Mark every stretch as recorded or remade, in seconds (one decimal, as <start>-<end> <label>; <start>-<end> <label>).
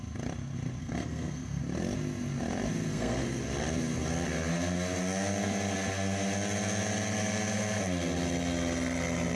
0.0-0.8 recorded; 0.8-1.6 remade; 1.6-2.9 recorded; 2.9-3.4 remade; 3.4-7.2 recorded; 7.2-7.8 remade; 7.8-9.4 recorded